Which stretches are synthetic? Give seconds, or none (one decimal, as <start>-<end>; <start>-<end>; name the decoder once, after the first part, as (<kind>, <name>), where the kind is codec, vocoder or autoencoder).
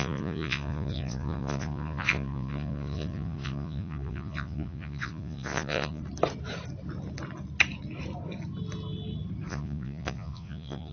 0.0-6.0 (vocoder, Vocos); 9.5-10.9